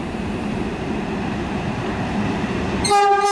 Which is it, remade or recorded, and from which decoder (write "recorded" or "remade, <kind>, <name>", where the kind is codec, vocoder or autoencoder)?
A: remade, vocoder, BigVGAN v2